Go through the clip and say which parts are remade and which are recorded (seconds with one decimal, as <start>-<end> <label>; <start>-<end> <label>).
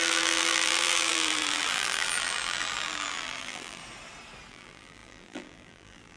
0.0-3.8 remade; 3.8-4.5 recorded; 4.5-6.2 remade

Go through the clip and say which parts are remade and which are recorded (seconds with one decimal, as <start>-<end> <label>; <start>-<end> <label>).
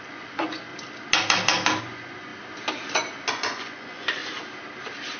0.0-0.7 remade; 0.7-1.8 recorded; 1.8-2.3 remade; 2.3-3.3 recorded; 3.3-4.2 remade; 4.2-5.2 recorded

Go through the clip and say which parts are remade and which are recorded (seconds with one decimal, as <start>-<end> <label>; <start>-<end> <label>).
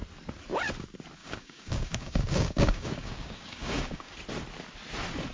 0.0-1.2 recorded; 1.2-4.1 remade; 4.1-5.3 recorded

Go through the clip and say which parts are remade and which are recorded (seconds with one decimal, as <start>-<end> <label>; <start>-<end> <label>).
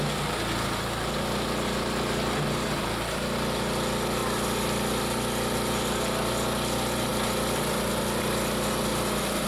0.0-9.5 recorded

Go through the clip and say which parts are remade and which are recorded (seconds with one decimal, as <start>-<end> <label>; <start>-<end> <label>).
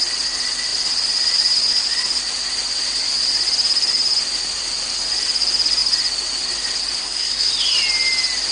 0.0-7.0 recorded; 7.0-7.5 remade; 7.5-8.5 recorded